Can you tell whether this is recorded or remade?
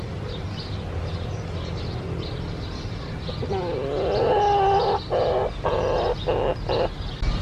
recorded